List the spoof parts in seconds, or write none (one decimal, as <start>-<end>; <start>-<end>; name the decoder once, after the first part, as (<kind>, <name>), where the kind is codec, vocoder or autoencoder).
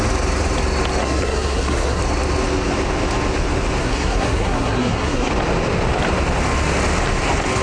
1.0-2.0 (codec, SNAC); 3.8-5.3